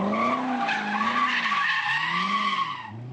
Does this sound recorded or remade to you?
recorded